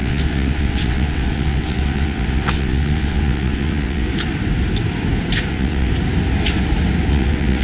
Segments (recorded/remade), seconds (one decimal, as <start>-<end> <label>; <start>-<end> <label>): 0.0-4.1 remade; 4.1-5.5 recorded; 5.5-5.9 remade; 5.9-7.1 recorded; 7.1-7.6 remade